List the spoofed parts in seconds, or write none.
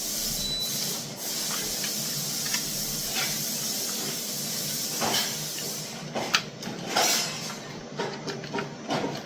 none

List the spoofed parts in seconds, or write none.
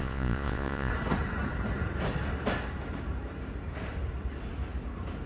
0.0-0.9 (vocoder, Vocos)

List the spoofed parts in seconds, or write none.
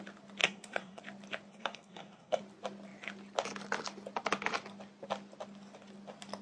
0.4-1.0 (codec, SNAC); 1.5-2.4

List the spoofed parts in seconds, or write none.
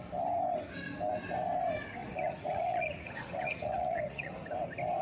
2.0-4.3 (vocoder, Vocos)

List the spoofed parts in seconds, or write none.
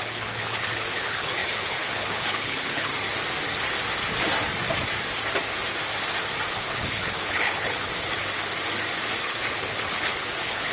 0.0-2.9 (codec, HILCodec); 6.5-7.9; 9.2-10.7